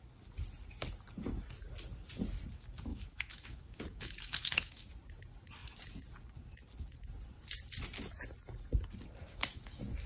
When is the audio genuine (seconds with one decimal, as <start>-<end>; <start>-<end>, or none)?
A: 0.0-2.9; 4.9-9.2